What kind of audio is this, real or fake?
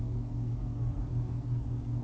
fake